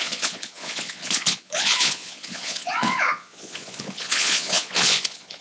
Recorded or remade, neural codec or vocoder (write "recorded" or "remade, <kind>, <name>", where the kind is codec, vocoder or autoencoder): remade, vocoder, Vocos